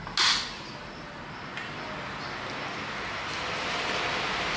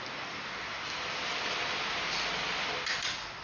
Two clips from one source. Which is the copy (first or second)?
second